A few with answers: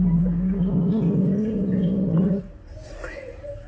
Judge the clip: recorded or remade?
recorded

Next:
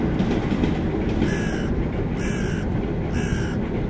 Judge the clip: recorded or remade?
recorded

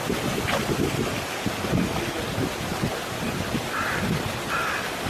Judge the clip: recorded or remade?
recorded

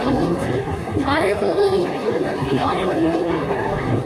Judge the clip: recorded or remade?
remade